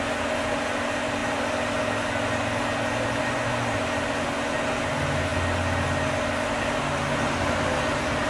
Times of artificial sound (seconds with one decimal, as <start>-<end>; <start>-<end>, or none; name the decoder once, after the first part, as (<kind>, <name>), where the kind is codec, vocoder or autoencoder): none